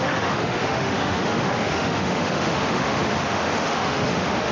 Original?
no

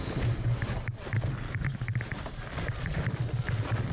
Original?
yes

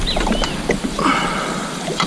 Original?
yes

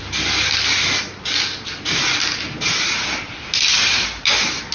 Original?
yes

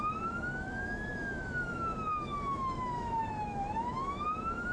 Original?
no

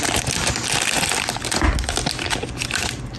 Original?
yes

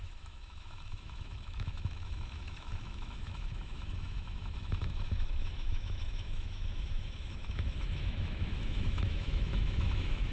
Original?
no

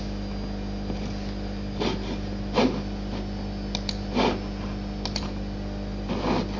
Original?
yes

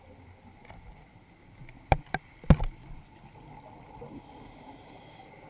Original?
yes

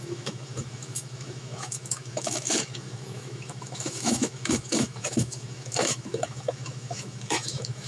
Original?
no